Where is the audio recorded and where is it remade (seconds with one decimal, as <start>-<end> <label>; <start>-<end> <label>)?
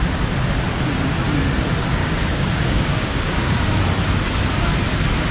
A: 0.0-2.0 recorded; 2.0-3.5 remade; 3.5-5.3 recorded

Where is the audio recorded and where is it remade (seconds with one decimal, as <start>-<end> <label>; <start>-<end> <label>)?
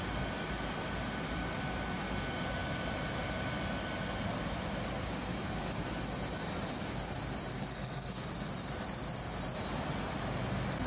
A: 0.0-7.7 recorded; 7.7-8.2 remade; 8.2-10.9 recorded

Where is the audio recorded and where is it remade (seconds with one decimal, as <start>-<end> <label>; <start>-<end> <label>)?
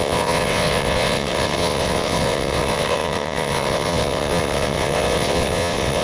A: 0.0-6.0 remade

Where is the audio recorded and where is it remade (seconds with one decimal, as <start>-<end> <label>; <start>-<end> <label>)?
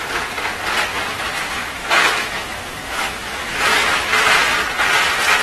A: 0.0-1.1 recorded; 1.1-4.3 remade; 4.3-5.4 recorded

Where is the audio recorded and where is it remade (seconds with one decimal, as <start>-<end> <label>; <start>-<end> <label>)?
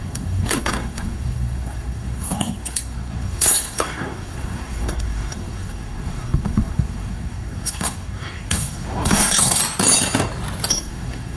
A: 0.0-9.6 remade; 9.6-10.7 recorded; 10.7-11.4 remade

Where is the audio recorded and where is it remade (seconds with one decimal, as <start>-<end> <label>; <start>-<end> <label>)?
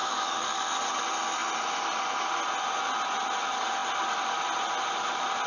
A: 0.0-0.8 remade; 0.8-5.5 recorded